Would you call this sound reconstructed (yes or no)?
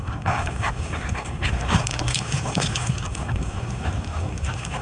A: yes